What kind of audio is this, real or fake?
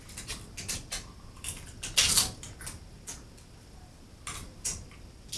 real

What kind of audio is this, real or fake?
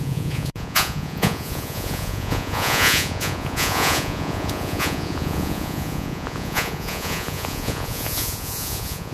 fake